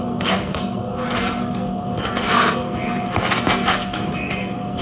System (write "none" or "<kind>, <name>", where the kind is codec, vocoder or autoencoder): codec, SNAC